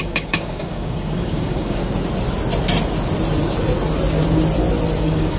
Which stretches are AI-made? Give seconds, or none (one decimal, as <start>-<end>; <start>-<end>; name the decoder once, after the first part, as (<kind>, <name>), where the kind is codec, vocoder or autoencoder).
0.0-1.8 (codec, DAC); 5.0-5.4